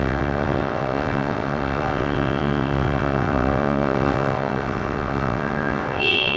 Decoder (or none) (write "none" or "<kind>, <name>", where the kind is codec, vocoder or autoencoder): vocoder, WaveNeXt